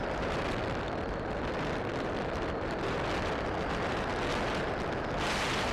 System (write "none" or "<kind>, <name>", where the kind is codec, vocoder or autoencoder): none